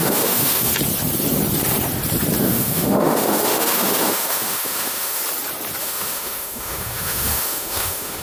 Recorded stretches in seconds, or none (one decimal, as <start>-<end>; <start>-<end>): 0.7-2.4; 5.2-5.8